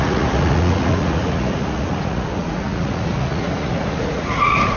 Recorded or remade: remade